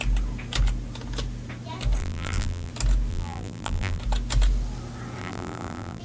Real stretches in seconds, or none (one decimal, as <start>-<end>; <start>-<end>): 0.0-2.0; 2.7-3.1; 4.0-5.2